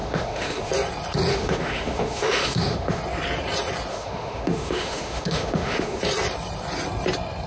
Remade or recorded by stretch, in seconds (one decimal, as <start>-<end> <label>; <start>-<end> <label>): 0.0-0.7 remade; 0.7-1.3 recorded; 1.3-3.0 remade; 3.0-3.9 recorded; 3.9-6.0 remade; 6.0-7.5 recorded